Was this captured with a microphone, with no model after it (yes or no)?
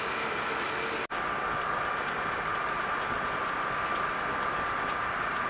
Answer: yes